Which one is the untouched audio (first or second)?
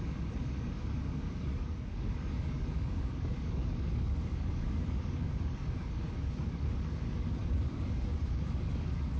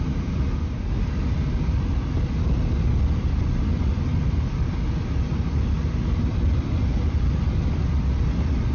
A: second